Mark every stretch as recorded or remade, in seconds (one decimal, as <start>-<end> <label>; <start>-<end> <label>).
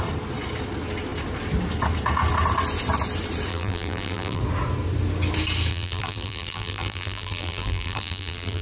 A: 0.0-3.5 recorded; 3.5-4.4 remade; 4.4-5.7 recorded; 5.7-8.6 remade